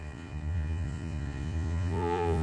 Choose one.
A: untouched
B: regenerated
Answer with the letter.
B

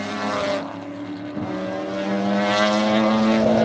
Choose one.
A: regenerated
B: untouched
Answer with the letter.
B